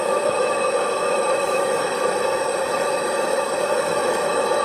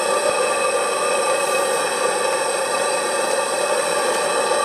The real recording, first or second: second